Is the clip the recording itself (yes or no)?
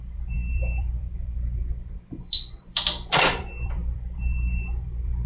no